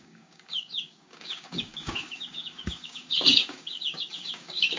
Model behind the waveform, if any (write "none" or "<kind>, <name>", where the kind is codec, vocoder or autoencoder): codec, DAC